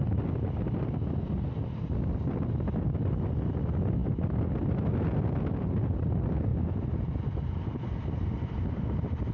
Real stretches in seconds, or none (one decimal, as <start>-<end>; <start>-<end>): 0.0-9.3